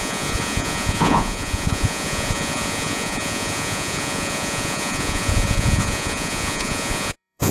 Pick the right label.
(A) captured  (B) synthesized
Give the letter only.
B